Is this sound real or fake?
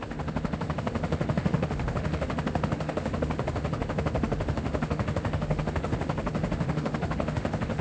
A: fake